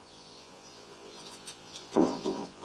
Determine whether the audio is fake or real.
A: fake